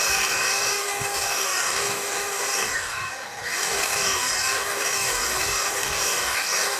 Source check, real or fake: fake